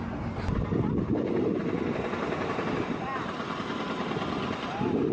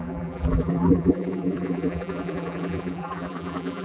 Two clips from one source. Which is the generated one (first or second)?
second